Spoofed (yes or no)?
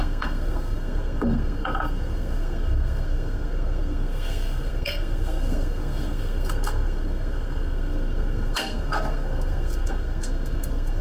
yes